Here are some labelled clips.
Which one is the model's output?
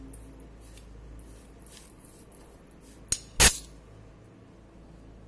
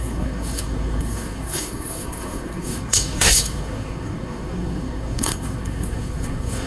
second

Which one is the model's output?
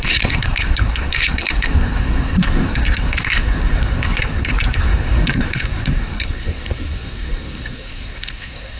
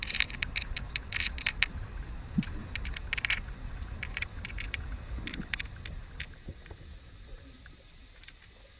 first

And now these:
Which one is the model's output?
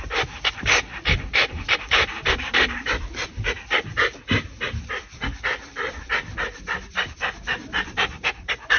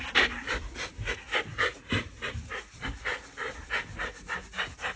first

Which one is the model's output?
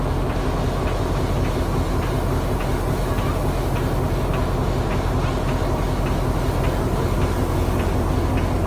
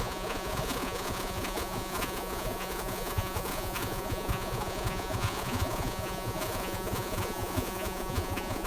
second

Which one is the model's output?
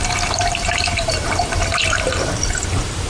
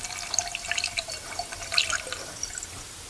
first